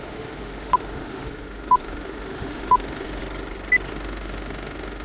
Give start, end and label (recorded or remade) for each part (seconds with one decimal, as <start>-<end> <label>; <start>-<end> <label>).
0.0-3.2 remade; 3.2-3.9 recorded; 3.9-5.0 remade